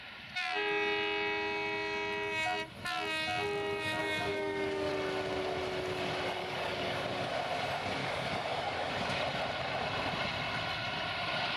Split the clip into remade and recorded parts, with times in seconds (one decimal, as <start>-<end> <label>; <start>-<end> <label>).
0.0-4.0 recorded; 4.0-4.9 remade; 4.9-6.4 recorded; 6.4-7.3 remade; 7.3-8.0 recorded; 8.0-8.9 remade; 8.9-11.6 recorded

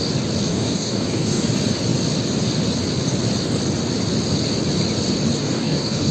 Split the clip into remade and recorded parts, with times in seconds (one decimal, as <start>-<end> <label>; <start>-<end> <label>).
0.0-0.5 recorded; 0.5-1.4 remade; 1.4-5.4 recorded; 5.4-6.1 remade

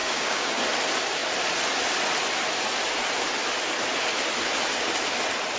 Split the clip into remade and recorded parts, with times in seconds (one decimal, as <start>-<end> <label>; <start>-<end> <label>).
0.0-0.5 remade; 0.5-5.6 recorded

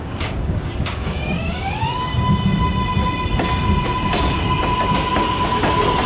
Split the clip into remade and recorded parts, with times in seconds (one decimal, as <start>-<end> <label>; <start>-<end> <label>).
0.0-2.1 remade; 2.1-6.1 recorded

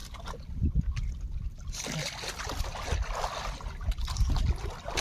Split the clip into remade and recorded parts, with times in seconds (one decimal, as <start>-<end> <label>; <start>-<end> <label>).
0.0-5.0 recorded

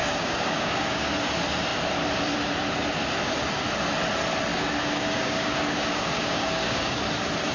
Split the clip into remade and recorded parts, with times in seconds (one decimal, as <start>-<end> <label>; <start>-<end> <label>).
0.0-1.1 remade; 1.1-4.5 recorded; 4.5-7.0 remade; 7.0-7.5 recorded